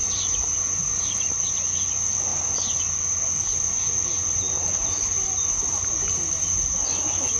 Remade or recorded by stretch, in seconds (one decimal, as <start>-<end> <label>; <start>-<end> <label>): 0.0-1.4 remade; 1.4-2.3 recorded; 2.3-2.9 remade; 2.9-4.1 recorded; 4.1-6.7 remade; 6.7-7.4 recorded